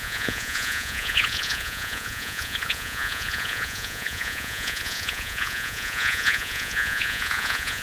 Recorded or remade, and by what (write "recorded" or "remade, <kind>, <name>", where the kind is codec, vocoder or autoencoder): remade, vocoder, Vocos